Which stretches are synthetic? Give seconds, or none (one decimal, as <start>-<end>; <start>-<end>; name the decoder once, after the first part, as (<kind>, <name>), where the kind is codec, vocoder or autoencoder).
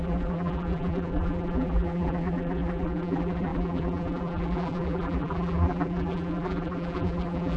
0.0-7.6 (vocoder, BigVGAN v2)